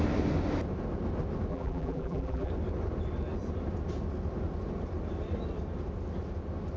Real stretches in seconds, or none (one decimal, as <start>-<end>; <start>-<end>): 0.0-1.5; 2.5-6.8